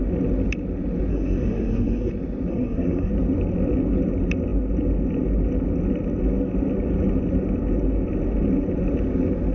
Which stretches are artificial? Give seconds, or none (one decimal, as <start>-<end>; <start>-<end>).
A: 1.1-2.1; 2.5-3.1

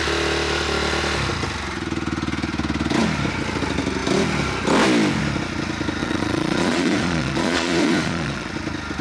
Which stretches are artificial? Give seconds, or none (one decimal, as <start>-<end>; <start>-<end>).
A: 6.0-8.5

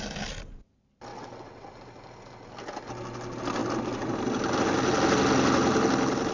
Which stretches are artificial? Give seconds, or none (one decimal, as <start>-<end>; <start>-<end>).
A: 1.1-1.7

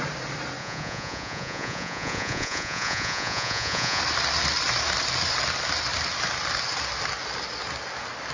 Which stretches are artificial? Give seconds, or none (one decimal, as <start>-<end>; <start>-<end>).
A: 0.6-4.0

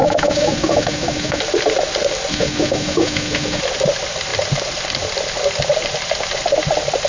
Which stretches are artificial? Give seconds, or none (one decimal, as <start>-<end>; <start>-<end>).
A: 0.0-1.4; 2.3-3.6

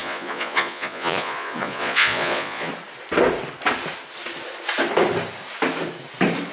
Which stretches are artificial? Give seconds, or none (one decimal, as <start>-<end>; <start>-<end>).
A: 0.0-2.7

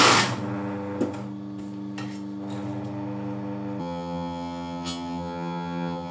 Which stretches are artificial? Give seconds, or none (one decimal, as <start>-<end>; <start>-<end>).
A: 3.8-6.1

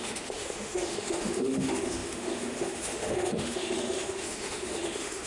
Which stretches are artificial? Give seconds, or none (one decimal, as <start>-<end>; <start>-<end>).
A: 0.0-5.3